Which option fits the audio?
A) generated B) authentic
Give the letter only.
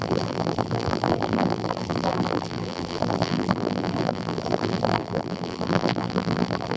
A